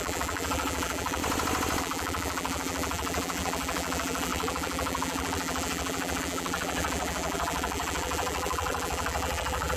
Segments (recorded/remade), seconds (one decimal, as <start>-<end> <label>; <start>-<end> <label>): 0.0-1.2 remade; 1.2-1.8 recorded; 1.8-9.8 remade